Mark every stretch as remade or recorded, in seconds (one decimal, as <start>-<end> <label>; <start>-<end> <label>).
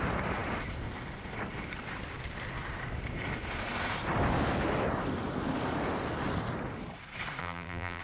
0.0-7.4 recorded; 7.4-8.0 remade